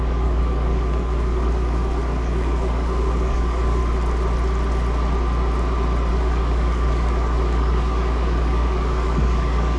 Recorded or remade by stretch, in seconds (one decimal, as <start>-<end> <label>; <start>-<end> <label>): 0.0-3.8 remade; 3.8-6.1 recorded; 6.1-9.8 remade